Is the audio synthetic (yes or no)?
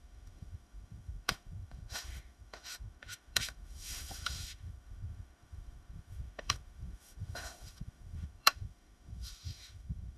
yes